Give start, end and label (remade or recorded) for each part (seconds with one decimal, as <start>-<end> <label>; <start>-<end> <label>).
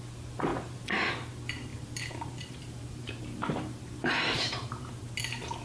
0.0-0.5 recorded; 0.5-1.1 remade; 1.1-1.7 recorded; 1.7-5.1 remade; 5.1-5.6 recorded